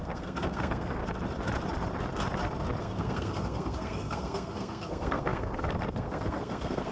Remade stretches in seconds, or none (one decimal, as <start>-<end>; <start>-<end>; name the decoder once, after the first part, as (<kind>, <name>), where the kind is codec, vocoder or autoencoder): 0.0-1.0 (codec, SNAC); 2.8-6.9